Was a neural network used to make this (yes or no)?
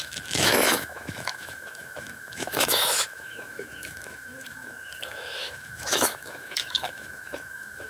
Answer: yes